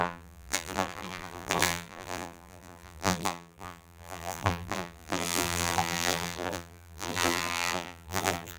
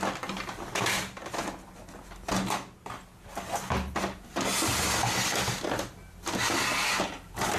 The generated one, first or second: first